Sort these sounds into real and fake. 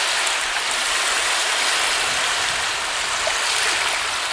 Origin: real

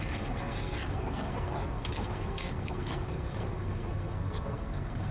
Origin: fake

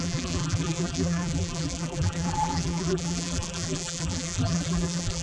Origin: fake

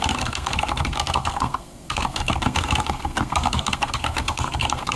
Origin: fake